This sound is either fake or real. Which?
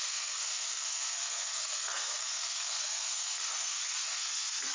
fake